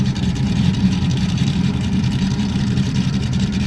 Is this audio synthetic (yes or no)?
yes